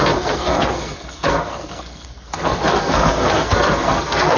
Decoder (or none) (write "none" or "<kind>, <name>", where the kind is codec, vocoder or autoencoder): codec, SNAC